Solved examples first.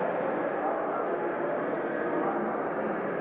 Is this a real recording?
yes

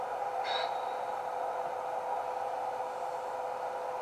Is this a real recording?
yes